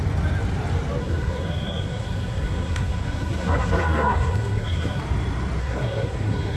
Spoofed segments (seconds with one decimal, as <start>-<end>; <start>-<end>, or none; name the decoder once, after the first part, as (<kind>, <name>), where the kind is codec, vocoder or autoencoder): 1.0-5.0 (codec, SNAC); 5.6-6.6